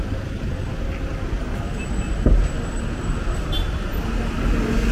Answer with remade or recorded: recorded